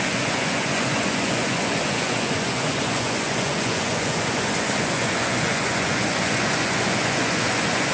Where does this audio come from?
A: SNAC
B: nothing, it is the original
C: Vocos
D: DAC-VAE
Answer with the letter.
C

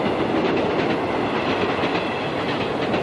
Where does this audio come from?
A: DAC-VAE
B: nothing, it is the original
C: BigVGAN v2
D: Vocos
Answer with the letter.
B